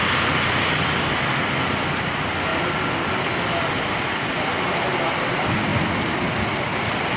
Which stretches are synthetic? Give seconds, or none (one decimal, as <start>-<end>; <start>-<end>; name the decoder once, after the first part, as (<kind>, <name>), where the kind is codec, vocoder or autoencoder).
none